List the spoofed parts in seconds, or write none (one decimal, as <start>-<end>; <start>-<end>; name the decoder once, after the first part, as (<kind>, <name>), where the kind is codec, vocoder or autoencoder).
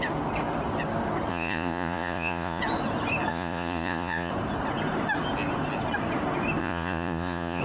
1.3-2.6 (vocoder, Vocos); 3.3-4.3; 6.6-7.6